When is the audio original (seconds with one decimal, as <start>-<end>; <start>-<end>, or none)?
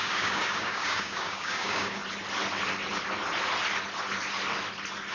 2.0-5.1